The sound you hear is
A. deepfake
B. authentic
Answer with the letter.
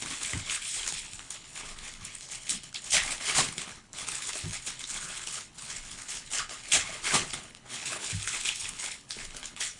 A